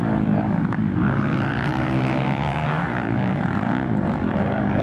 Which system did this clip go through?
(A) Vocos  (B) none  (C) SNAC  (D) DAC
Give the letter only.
D